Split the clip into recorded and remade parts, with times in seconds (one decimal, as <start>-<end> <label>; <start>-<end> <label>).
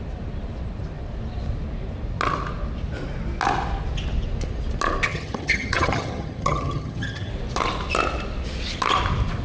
0.0-5.1 recorded; 5.1-7.3 remade; 7.3-9.4 recorded